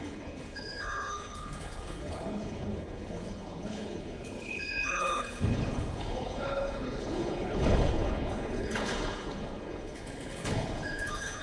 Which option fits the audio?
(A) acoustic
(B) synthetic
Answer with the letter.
B